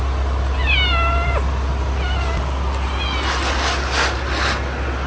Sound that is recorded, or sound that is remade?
recorded